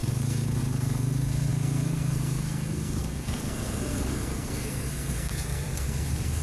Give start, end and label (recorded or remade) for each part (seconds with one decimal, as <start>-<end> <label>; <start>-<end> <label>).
0.0-6.4 remade

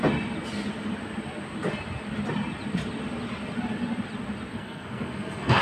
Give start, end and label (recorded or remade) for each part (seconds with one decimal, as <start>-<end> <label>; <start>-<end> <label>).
0.0-4.5 recorded; 4.5-5.6 remade

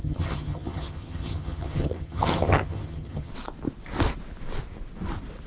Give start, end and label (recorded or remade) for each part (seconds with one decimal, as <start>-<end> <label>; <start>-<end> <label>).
0.0-3.3 remade; 3.3-5.5 recorded

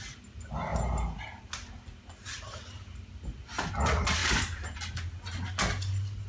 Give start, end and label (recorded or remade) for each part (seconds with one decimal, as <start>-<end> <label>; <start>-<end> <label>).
0.0-0.7 recorded; 0.7-1.4 remade; 1.4-4.2 recorded; 4.2-4.8 remade; 4.8-6.3 recorded

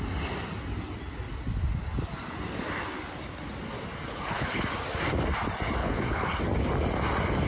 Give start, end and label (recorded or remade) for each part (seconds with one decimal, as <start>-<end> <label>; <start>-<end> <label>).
0.0-4.1 recorded; 4.1-4.7 remade; 4.7-5.8 recorded; 5.8-6.4 remade; 6.4-7.5 recorded

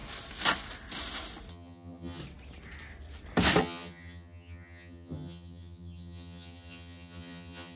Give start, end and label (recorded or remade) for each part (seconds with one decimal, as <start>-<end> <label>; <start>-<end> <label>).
0.0-1.5 recorded; 1.5-2.2 remade; 2.2-3.6 recorded; 3.6-7.8 remade